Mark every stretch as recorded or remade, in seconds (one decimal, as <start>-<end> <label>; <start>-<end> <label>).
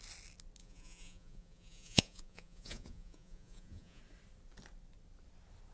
0.0-0.6 recorded; 0.6-4.0 remade; 4.0-5.7 recorded